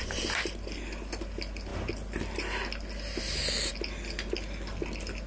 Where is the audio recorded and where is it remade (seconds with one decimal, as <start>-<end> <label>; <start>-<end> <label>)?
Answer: 0.0-5.3 recorded